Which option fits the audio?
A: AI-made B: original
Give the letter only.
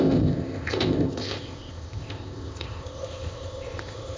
A